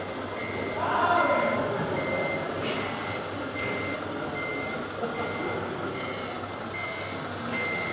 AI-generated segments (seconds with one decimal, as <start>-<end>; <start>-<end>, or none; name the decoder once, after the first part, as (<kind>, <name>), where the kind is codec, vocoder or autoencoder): none